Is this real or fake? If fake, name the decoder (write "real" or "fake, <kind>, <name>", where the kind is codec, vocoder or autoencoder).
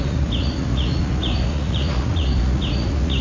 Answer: fake, vocoder, Vocos